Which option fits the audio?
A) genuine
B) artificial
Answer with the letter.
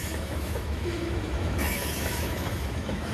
B